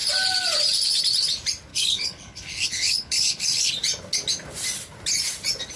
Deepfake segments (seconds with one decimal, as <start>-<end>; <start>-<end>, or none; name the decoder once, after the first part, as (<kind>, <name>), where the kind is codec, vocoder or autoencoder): 1.7-3.7 (codec, HILCodec)